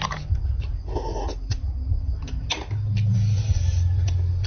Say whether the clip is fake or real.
real